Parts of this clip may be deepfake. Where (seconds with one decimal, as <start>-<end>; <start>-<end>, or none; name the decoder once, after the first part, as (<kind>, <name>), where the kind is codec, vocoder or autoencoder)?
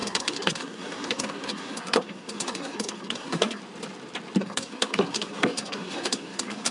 0.0-3.6 (codec, SNAC); 4.4-6.7